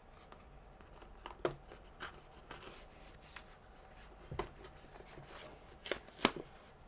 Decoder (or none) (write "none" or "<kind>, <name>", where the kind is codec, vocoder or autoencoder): none